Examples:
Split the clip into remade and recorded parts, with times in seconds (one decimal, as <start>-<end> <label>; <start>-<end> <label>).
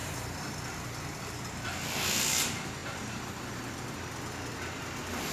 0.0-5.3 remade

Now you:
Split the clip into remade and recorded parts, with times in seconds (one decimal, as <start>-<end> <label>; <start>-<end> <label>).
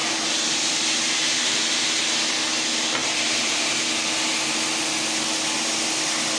0.0-1.8 remade; 1.8-3.0 recorded; 3.0-3.8 remade; 3.8-6.4 recorded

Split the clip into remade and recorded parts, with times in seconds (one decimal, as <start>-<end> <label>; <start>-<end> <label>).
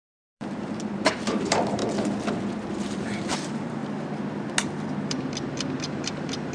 0.0-1.8 remade; 1.8-2.7 recorded; 2.7-3.8 remade; 3.8-5.8 recorded; 5.8-6.5 remade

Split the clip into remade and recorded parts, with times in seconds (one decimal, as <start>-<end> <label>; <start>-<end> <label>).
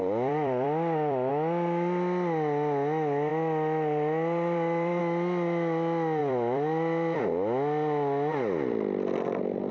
0.0-1.3 remade; 1.3-3.3 recorded; 3.3-5.0 remade; 5.0-6.2 recorded; 6.2-7.2 remade; 7.2-9.7 recorded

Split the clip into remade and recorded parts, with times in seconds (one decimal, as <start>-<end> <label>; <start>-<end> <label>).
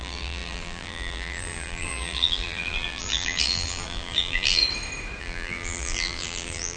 0.0-4.6 remade; 4.6-5.2 recorded; 5.2-6.8 remade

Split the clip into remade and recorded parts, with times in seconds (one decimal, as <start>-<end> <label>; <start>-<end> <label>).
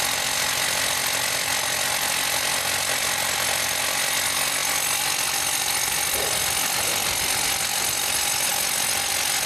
0.0-9.5 recorded